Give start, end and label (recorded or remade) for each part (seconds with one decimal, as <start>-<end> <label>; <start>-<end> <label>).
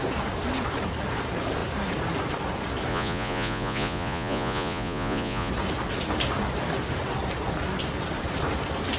0.0-2.9 recorded; 2.9-5.5 remade; 5.5-9.0 recorded